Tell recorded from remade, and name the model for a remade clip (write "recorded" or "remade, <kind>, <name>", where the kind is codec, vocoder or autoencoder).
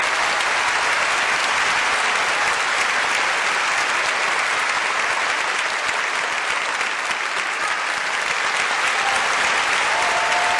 recorded